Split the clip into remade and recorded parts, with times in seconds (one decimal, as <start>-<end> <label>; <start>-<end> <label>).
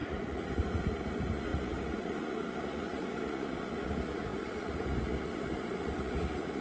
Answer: 0.0-6.6 remade